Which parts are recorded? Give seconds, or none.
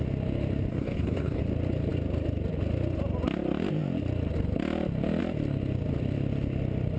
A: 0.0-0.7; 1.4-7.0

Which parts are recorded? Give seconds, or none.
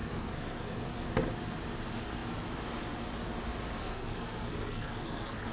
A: 1.1-3.8